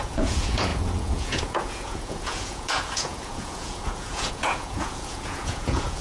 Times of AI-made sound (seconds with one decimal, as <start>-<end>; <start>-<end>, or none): 0.0-6.0